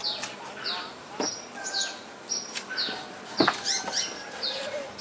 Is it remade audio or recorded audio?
recorded